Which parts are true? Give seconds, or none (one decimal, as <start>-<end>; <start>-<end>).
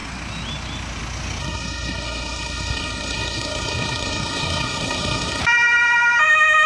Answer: 0.0-1.4; 5.4-6.7